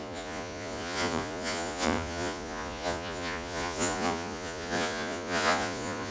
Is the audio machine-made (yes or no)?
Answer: yes